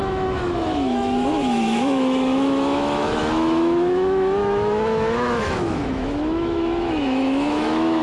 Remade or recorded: remade